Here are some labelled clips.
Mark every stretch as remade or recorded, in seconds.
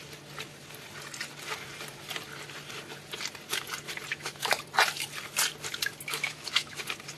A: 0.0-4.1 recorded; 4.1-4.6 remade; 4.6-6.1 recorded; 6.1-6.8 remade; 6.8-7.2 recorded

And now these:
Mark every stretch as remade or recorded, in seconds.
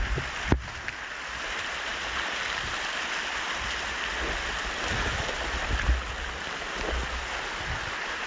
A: 0.0-8.3 recorded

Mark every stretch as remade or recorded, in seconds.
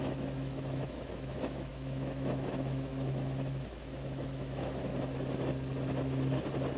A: 0.0-4.9 remade; 4.9-6.8 recorded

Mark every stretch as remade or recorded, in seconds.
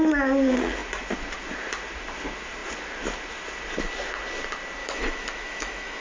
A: 0.0-4.8 recorded; 4.8-6.0 remade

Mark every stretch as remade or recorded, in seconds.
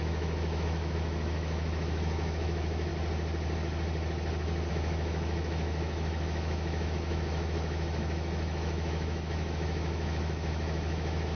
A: 0.0-2.9 remade; 2.9-4.7 recorded; 4.7-11.4 remade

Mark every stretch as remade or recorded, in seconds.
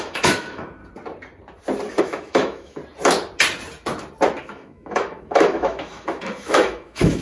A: 0.0-0.8 remade; 0.8-2.0 recorded; 2.0-2.8 remade; 2.8-4.4 recorded; 4.4-7.2 remade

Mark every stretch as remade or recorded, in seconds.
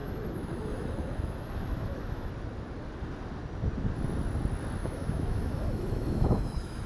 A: 0.0-2.3 remade; 2.3-4.8 recorded; 4.8-6.9 remade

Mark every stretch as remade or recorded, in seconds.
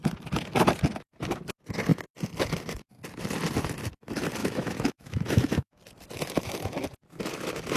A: 0.0-4.4 recorded; 4.4-5.8 remade; 5.8-7.8 recorded